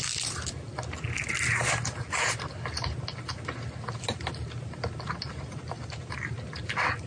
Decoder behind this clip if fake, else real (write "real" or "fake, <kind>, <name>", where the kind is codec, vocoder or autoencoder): real